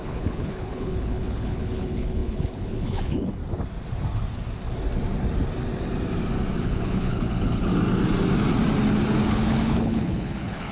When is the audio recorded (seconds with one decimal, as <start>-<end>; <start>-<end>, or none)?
3.4-6.6; 7.7-9.3